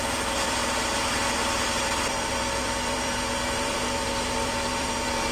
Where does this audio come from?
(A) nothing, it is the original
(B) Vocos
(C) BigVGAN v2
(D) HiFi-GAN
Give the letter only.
C